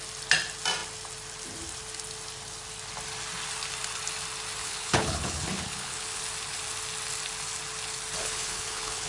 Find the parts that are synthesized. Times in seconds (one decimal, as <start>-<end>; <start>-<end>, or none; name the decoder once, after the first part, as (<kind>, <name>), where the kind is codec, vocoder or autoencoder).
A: 4.6-6.2 (codec, HILCodec); 8.2-9.1